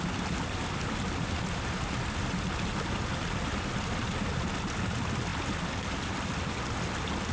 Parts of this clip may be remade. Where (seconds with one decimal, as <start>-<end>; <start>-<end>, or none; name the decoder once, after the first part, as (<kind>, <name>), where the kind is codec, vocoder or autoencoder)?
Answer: none